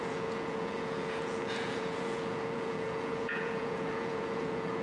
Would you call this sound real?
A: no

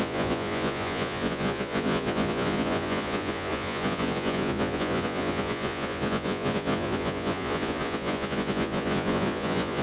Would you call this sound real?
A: no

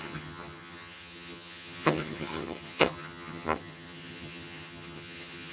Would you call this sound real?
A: no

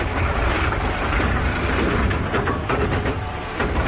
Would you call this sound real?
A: no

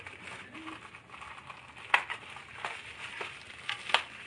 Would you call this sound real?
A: yes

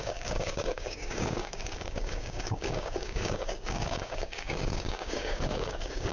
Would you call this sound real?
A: no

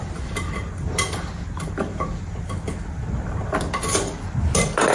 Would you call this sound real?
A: yes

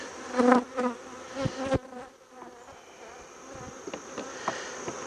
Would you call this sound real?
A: yes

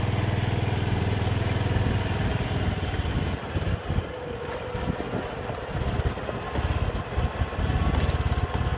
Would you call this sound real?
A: yes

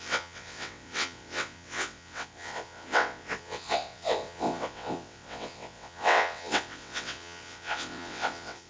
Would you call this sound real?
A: no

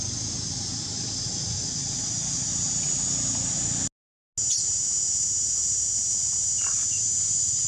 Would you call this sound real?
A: yes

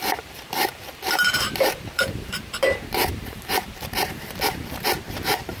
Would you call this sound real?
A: no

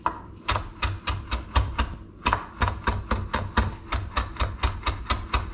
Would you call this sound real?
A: yes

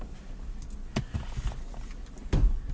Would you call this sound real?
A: yes